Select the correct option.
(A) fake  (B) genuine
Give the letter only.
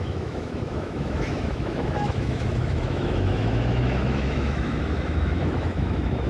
A